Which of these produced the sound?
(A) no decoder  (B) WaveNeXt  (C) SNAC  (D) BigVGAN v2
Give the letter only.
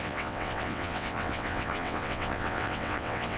B